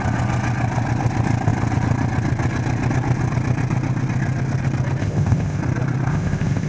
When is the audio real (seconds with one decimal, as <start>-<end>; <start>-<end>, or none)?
0.0-5.0; 5.6-6.1